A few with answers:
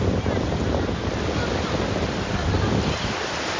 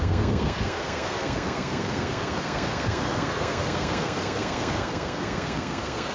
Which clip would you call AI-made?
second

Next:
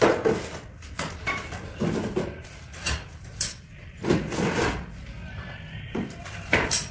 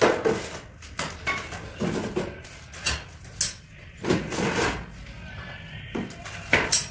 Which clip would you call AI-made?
first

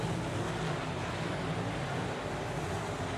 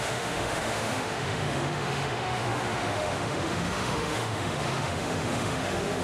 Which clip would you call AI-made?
second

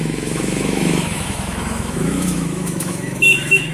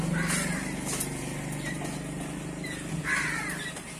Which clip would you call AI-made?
first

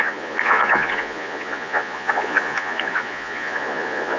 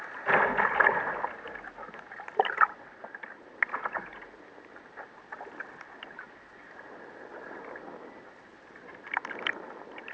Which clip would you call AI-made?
first